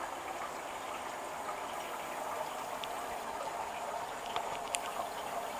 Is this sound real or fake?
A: real